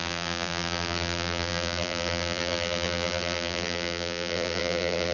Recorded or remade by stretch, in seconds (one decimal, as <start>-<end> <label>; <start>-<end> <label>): 0.0-5.1 remade